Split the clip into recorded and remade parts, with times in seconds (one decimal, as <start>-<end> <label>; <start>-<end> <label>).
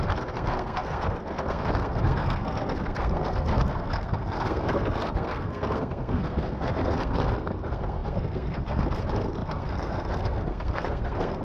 0.0-11.4 remade